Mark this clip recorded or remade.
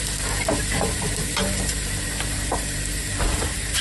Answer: remade